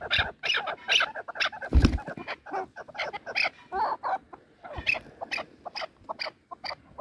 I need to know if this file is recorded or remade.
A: recorded